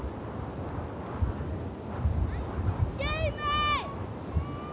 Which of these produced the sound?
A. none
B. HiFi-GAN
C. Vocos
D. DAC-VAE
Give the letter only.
A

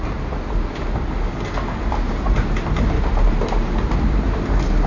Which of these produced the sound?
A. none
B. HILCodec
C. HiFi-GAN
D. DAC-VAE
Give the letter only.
A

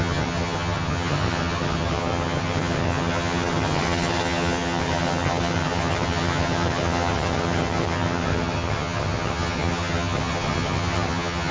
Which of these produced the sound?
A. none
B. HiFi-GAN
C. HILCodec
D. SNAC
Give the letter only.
B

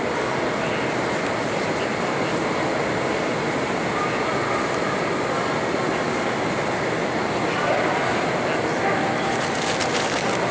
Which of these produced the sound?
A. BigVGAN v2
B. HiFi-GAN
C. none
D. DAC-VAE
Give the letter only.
C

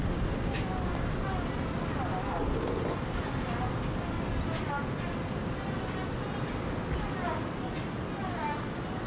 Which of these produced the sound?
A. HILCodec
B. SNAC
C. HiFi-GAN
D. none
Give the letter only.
D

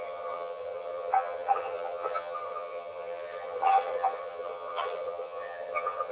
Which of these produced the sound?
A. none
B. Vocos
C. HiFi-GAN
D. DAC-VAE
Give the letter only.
C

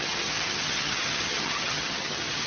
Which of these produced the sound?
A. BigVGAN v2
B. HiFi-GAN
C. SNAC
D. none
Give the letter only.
B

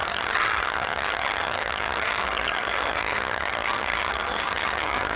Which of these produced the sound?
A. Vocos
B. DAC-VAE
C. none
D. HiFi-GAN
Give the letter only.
D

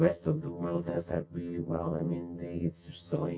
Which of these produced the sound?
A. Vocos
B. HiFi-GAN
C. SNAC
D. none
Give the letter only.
B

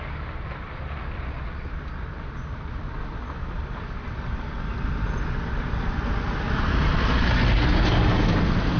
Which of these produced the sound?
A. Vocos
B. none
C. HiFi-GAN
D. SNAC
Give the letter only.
B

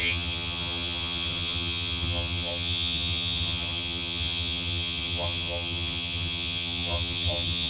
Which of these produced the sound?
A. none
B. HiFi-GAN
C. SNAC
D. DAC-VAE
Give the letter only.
B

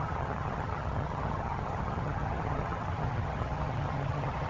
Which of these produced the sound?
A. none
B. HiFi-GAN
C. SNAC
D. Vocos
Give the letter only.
B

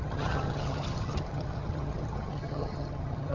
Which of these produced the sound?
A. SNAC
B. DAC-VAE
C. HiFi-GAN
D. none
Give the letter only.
C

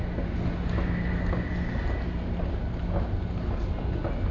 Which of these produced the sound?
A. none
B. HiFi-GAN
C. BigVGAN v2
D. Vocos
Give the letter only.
A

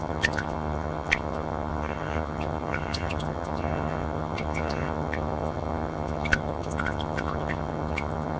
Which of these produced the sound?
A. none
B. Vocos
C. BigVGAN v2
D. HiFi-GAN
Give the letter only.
D